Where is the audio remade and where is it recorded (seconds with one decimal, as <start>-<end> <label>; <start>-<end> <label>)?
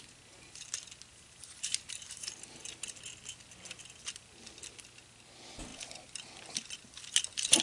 0.0-1.1 recorded; 1.1-2.3 remade; 2.3-7.6 recorded